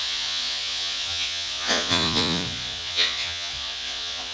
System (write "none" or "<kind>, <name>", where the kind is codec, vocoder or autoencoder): vocoder, Vocos